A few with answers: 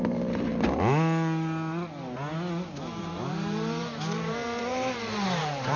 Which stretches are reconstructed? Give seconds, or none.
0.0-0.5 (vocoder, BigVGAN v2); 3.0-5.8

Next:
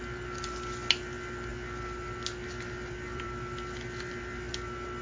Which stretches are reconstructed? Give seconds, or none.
1.5-4.5 (vocoder, BigVGAN v2)